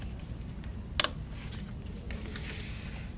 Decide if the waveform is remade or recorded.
recorded